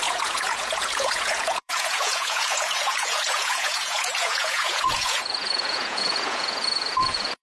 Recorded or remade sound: remade